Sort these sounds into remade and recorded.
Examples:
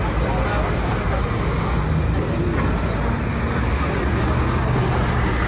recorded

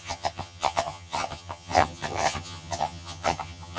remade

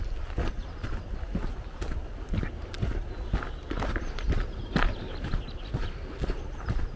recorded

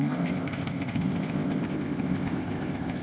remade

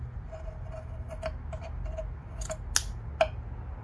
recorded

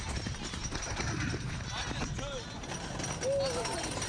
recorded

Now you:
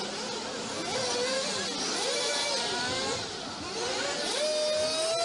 recorded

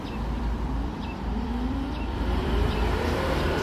remade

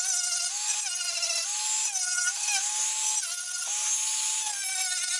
recorded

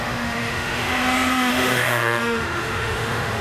remade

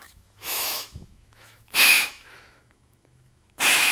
remade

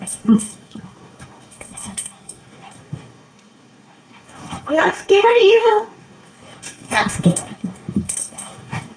remade